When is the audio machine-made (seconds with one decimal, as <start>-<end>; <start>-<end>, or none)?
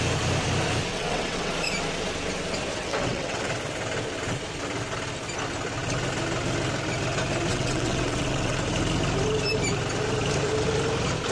0.9-1.5; 2.8-3.4; 7.5-8.6